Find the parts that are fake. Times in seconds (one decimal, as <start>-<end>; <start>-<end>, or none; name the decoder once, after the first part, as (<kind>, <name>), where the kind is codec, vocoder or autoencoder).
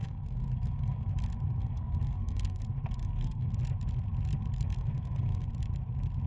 0.0-1.1 (codec, SNAC); 1.6-2.6; 3.0-3.5; 4.8-5.5